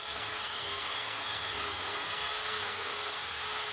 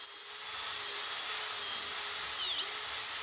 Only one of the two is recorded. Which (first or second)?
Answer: second